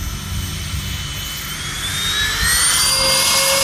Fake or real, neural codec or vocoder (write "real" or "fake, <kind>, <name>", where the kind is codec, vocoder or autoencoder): real